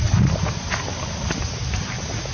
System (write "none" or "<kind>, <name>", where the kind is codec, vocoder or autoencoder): none